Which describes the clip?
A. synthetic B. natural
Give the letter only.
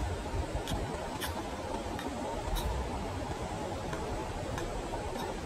A